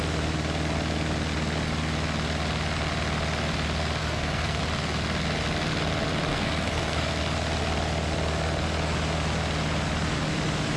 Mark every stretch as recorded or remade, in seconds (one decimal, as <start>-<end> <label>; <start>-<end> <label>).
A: 0.0-4.0 recorded; 4.0-4.6 remade; 4.6-6.3 recorded; 6.3-7.1 remade; 7.1-10.8 recorded